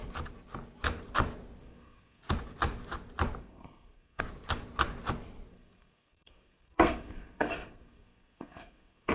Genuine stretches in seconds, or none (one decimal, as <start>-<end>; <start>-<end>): 0.0-1.6; 2.3-3.4; 4.2-5.5